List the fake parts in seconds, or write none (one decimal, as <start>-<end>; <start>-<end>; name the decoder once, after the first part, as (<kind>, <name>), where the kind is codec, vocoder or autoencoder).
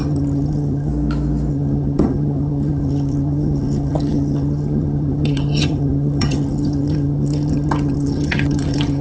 0.0-0.9 (vocoder, HiFi-GAN); 1.5-9.0